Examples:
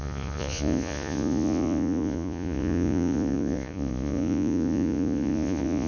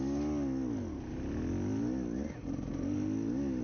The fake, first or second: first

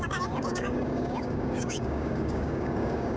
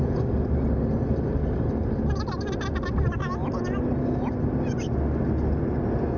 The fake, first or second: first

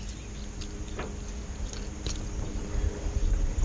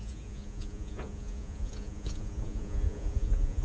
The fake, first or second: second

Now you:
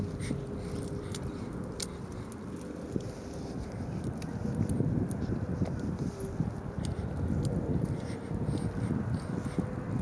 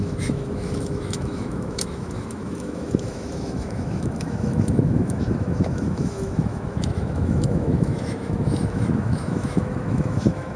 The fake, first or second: second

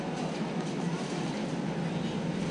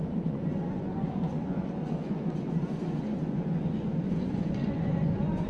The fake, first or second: second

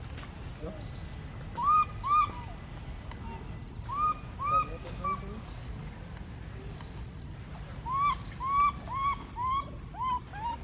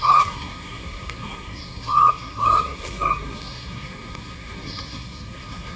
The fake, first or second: second